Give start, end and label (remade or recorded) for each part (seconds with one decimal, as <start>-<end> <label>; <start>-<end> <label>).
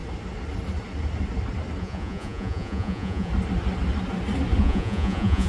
0.0-1.8 recorded; 1.8-3.3 remade; 3.3-4.6 recorded; 4.6-5.5 remade